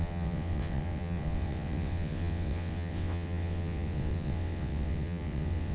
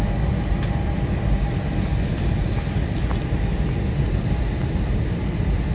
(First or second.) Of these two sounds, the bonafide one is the second